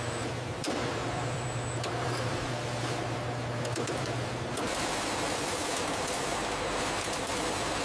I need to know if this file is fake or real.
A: fake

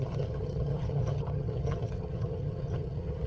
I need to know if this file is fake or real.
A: fake